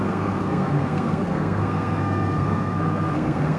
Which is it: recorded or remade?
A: remade